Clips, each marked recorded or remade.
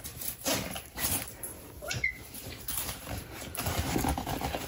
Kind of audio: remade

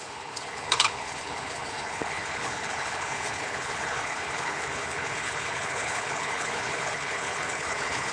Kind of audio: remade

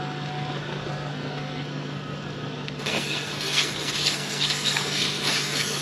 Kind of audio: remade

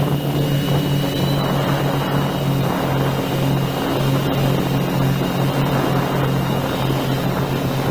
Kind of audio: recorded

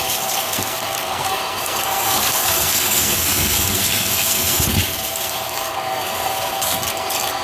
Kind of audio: remade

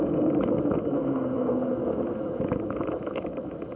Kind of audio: remade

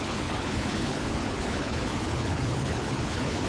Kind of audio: remade